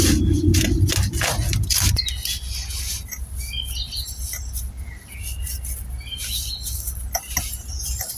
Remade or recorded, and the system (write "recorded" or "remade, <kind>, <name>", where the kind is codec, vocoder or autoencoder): recorded